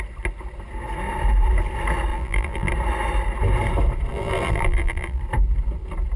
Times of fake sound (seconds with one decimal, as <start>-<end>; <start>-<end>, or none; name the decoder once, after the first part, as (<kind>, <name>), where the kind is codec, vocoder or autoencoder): 2.1-2.7 (vocoder, BigVGAN v2); 4.1-5.2